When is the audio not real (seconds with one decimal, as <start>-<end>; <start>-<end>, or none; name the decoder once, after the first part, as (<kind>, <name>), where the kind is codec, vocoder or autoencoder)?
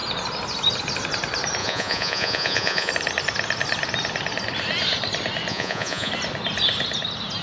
1.6-2.9 (vocoder, Vocos); 5.5-6.1